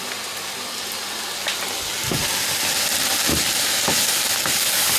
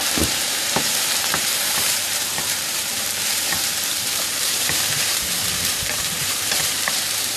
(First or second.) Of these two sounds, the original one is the first